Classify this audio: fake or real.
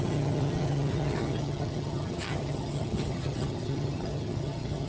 fake